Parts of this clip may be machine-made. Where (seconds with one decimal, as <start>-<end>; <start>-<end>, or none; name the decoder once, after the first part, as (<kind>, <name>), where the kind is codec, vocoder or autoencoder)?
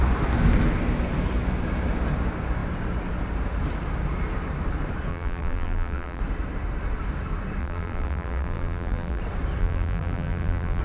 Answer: 5.1-6.2 (vocoder, BigVGAN v2); 7.6-9.2; 9.6-10.8